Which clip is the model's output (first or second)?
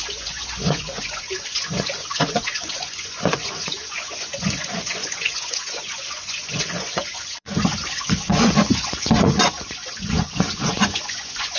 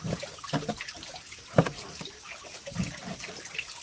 first